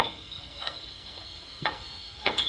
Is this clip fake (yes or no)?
yes